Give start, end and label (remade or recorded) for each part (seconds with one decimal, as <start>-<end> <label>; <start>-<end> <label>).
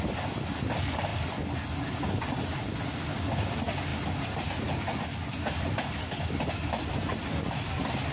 0.0-8.1 recorded